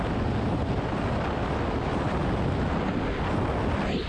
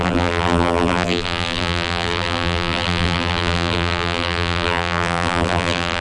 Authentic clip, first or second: first